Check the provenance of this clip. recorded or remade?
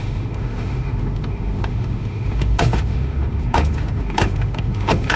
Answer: remade